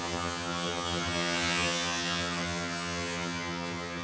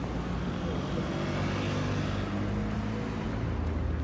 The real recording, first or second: second